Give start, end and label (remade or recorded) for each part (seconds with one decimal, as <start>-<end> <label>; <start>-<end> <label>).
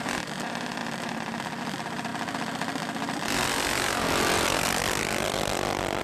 0.0-0.8 remade; 0.8-1.6 recorded; 1.6-2.1 remade; 2.1-6.0 recorded